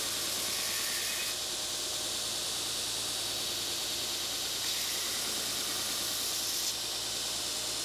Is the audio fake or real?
real